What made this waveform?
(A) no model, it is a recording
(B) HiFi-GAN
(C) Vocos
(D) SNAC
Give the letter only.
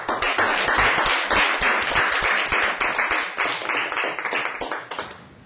A